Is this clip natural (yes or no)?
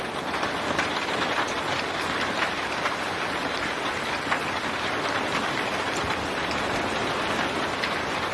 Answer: yes